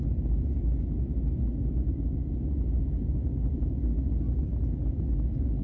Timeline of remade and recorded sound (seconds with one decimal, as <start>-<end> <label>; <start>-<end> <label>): 0.0-5.6 recorded